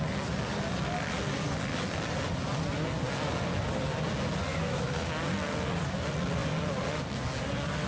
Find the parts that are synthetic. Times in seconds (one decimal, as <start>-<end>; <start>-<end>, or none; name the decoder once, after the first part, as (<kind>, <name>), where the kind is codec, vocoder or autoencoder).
4.5-5.1 (autoencoder, DAC-VAE)